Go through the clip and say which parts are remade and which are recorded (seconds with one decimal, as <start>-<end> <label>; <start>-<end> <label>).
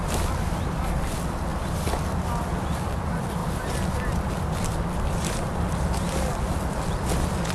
0.0-7.5 recorded